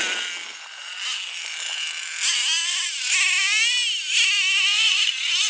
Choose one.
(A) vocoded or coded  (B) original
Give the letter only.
B